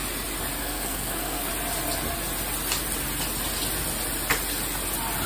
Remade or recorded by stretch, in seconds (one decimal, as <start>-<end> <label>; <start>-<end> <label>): 0.0-0.6 recorded; 0.6-1.5 remade; 1.5-5.3 recorded